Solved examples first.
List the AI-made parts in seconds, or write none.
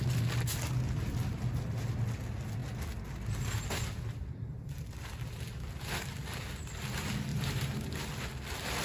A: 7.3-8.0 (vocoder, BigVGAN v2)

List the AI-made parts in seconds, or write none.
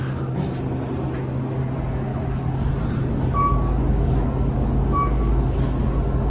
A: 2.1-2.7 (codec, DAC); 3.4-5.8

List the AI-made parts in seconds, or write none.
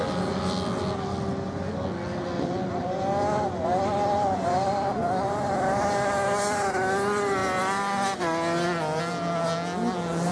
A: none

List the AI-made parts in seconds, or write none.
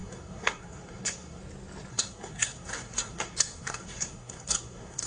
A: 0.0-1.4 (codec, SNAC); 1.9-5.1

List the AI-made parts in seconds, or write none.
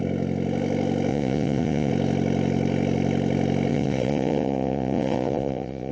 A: 1.1-1.9 (vocoder, Vocos); 3.7-5.9